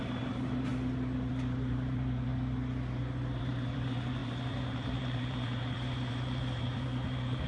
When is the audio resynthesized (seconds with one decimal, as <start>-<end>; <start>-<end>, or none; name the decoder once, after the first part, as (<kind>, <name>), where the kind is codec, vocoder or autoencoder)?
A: 0.0-0.7 (vocoder, BigVGAN v2); 1.3-2.3; 3.4-7.5